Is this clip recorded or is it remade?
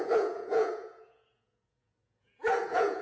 remade